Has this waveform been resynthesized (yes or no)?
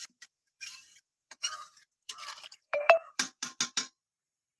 yes